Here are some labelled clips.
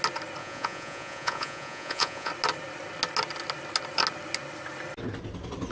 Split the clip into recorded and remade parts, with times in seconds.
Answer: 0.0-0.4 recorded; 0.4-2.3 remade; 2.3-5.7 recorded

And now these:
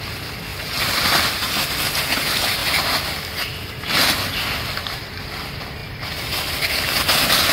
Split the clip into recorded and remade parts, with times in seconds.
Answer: 0.0-0.5 recorded; 0.5-1.3 remade; 1.3-2.6 recorded; 2.6-3.2 remade; 3.2-4.8 recorded; 4.8-5.3 remade; 5.3-7.5 recorded